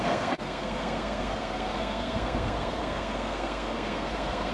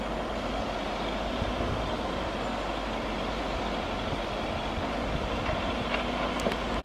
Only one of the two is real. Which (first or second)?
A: second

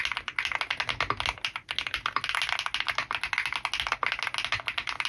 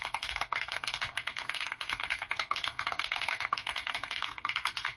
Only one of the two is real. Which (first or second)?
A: first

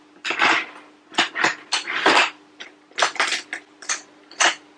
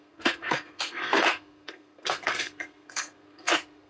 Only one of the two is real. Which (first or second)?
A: first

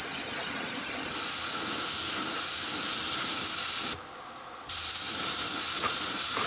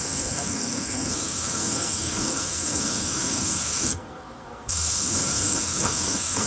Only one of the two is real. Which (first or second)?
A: first